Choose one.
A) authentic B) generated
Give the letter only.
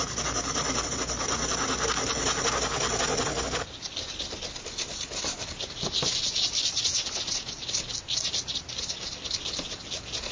A